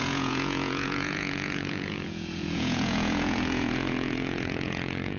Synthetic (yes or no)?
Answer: yes